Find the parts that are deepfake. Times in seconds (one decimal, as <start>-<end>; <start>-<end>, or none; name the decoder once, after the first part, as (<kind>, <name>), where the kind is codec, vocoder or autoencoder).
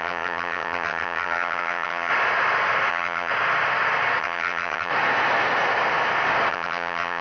0.0-2.1 (vocoder, HiFi-GAN); 2.9-3.3; 4.2-4.9; 6.5-7.2